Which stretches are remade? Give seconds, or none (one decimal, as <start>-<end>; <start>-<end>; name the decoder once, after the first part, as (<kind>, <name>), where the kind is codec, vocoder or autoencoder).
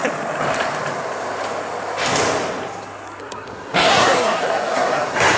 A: 3.2-5.4 (codec, SNAC)